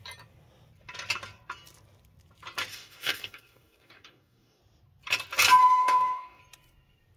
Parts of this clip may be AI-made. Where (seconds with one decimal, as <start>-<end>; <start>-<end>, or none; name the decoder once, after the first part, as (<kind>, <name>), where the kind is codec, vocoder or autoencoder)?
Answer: 2.7-4.6 (codec, DAC); 5.6-6.4